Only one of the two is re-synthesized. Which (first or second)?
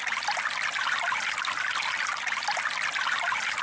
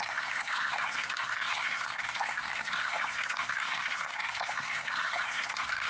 second